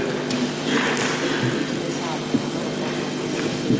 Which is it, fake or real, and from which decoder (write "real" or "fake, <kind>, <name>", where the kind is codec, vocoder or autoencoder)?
real